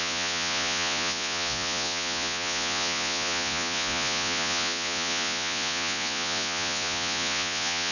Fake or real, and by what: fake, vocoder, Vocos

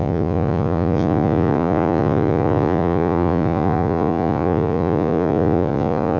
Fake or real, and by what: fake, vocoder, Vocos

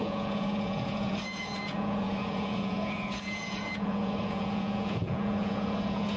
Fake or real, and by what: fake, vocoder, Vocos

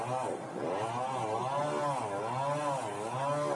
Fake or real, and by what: real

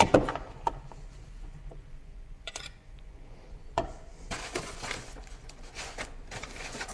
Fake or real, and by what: fake, vocoder, Vocos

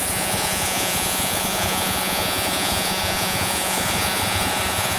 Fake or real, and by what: fake, vocoder, Vocos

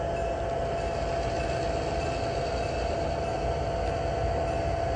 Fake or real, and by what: real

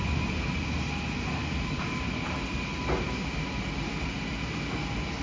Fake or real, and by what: real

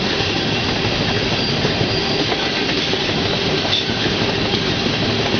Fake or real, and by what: real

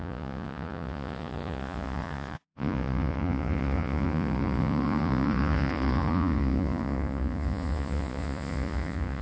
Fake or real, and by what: fake, vocoder, Vocos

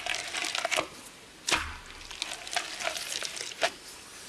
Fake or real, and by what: real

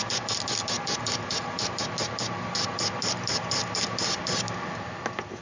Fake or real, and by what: real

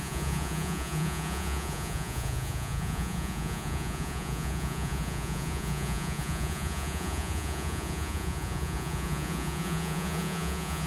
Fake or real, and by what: fake, vocoder, Vocos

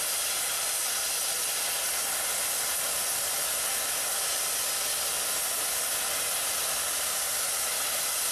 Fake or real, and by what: real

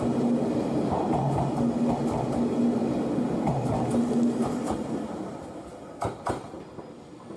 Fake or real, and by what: real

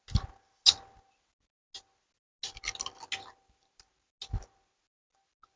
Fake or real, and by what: real